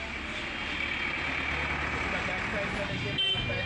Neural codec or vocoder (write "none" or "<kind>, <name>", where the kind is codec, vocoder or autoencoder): none